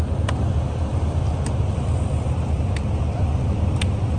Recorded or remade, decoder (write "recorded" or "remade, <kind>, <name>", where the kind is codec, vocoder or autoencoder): recorded